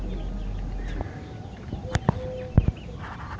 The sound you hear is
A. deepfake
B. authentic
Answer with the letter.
B